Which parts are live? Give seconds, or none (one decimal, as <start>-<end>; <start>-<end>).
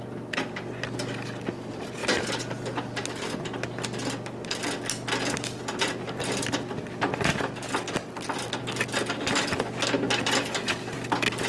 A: 0.0-11.5